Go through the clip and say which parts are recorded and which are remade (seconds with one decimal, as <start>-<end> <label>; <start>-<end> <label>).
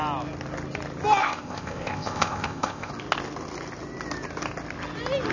0.0-1.2 recorded; 1.2-2.9 remade; 2.9-5.3 recorded